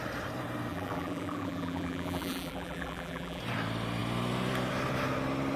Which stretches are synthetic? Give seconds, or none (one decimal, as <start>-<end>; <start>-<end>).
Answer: 0.7-3.4

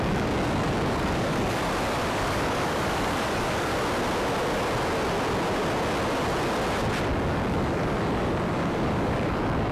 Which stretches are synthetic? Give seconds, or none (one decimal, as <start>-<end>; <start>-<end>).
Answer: 0.0-1.6; 2.1-3.7; 7.3-9.7